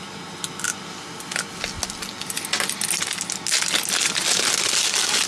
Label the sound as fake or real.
real